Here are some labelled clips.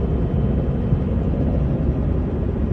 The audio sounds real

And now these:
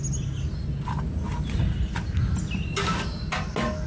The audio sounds real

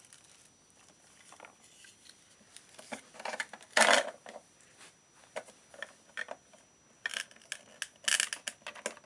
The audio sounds real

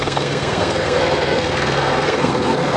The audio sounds fake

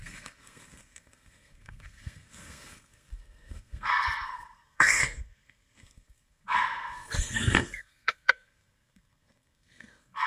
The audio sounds fake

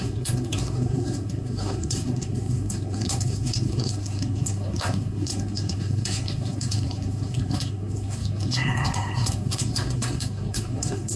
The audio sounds fake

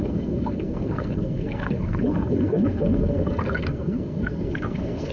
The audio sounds fake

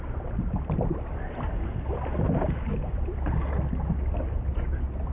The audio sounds real